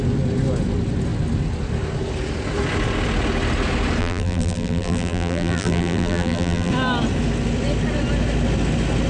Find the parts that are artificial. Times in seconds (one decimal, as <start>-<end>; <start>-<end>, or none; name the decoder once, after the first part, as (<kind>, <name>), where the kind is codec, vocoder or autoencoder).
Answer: 4.0-6.7 (vocoder, BigVGAN v2)

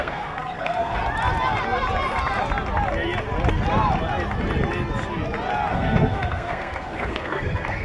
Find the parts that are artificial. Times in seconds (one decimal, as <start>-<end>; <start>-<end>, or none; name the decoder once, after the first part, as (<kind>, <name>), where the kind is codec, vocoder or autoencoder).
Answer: 0.0-1.0 (codec, SNAC); 5.7-7.8

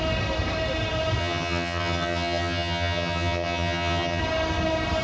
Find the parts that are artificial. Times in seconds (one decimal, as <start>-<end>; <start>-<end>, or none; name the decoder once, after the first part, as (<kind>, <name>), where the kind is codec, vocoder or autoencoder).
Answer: 1.2-4.2 (vocoder, HiFi-GAN)

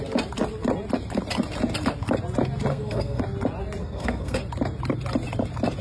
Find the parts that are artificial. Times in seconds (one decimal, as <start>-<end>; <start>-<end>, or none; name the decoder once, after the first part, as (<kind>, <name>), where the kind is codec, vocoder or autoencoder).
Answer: 2.7-3.2 (codec, SNAC); 3.8-4.4

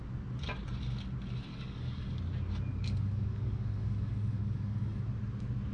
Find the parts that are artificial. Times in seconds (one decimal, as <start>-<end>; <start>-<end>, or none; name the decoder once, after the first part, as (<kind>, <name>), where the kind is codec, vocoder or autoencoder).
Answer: 1.5-2.2 (codec, DAC); 2.7-5.0

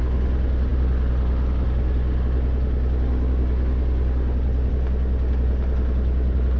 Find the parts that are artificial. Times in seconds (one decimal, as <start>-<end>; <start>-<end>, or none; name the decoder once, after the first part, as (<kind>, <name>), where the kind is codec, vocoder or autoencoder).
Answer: none